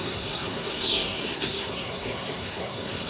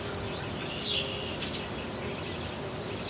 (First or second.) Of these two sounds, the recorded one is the second